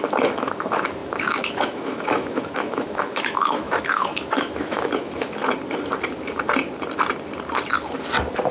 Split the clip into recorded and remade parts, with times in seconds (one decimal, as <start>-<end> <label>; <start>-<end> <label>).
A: 0.0-5.4 remade; 5.4-8.5 recorded